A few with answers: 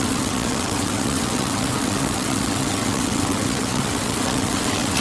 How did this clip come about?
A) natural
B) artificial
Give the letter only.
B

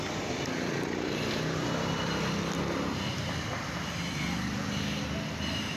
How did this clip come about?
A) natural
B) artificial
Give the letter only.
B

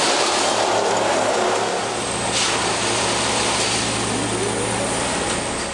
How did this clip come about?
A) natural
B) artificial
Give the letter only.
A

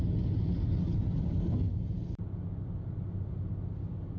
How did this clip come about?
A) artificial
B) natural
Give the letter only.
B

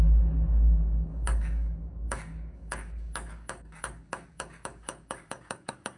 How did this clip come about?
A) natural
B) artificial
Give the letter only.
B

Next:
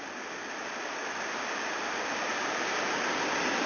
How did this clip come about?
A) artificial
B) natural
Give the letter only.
B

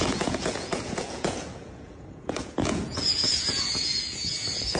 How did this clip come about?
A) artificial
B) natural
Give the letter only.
A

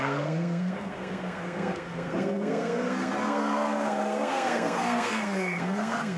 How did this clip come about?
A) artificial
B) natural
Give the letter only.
A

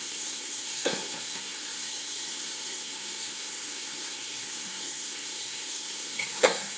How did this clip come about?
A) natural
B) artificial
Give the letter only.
B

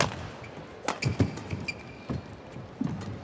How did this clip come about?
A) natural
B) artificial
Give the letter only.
A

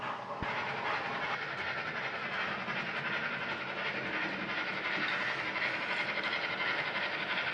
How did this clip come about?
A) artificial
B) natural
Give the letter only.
B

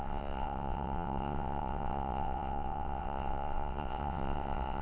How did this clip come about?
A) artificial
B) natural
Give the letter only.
A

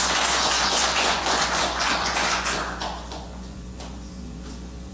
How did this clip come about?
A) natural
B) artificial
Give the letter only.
B